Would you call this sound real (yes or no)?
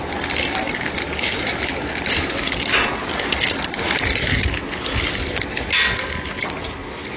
yes